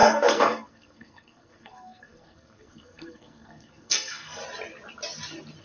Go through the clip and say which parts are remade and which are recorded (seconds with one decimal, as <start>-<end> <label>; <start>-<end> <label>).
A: 0.0-4.4 remade; 4.4-5.6 recorded